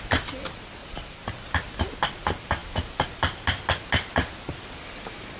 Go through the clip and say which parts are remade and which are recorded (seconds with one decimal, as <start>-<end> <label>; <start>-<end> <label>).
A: 0.0-0.8 recorded; 0.8-1.5 remade; 1.5-5.4 recorded